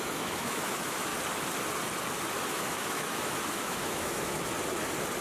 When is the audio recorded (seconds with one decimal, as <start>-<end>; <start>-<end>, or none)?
1.1-2.5; 4.5-5.2